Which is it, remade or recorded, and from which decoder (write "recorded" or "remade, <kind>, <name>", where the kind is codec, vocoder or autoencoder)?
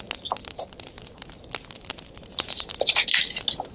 recorded